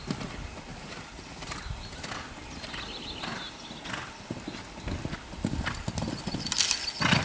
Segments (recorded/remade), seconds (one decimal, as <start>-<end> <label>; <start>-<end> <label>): 0.0-0.7 recorded; 0.7-2.1 remade; 2.1-7.2 recorded